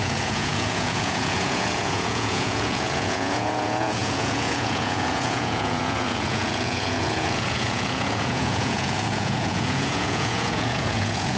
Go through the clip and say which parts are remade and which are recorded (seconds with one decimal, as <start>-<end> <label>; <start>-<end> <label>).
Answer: 0.0-11.4 remade